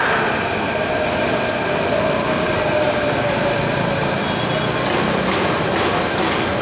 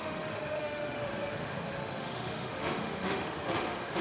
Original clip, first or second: first